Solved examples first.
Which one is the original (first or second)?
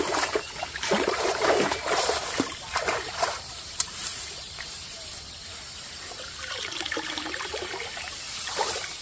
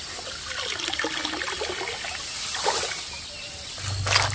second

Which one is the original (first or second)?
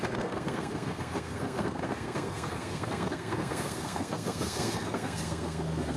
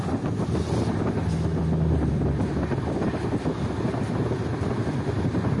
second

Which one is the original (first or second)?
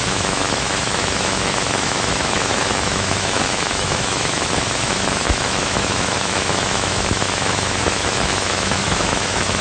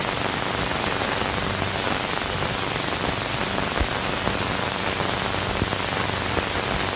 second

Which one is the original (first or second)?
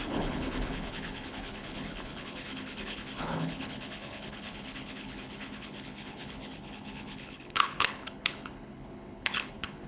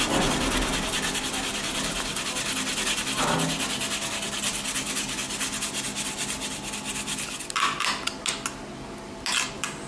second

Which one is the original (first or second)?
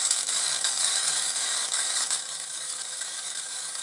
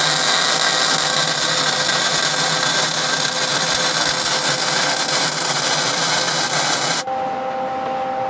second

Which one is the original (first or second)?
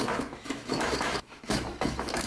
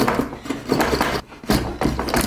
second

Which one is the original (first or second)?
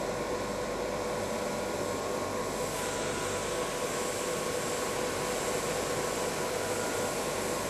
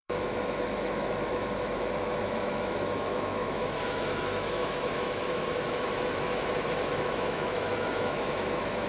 first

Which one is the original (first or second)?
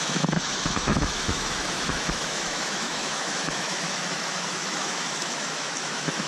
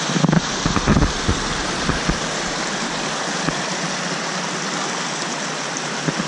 second